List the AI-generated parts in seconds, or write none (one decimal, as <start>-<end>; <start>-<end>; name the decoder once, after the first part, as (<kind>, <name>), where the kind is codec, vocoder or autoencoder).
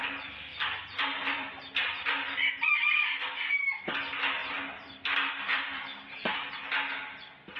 0.0-7.6 (vocoder, BigVGAN v2)